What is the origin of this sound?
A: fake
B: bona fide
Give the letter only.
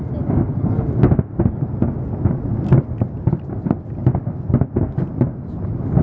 B